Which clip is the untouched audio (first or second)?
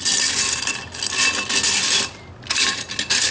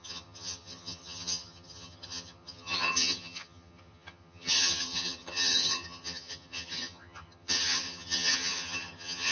first